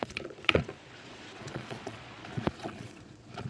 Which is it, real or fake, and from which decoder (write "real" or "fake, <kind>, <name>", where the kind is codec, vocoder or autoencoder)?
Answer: fake, vocoder, Vocos